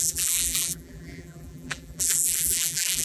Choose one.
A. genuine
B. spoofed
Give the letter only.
B